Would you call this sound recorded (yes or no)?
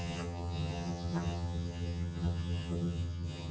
no